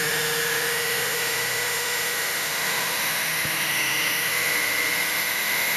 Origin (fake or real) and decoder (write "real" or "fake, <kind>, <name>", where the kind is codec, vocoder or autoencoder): fake, autoencoder, DAC-VAE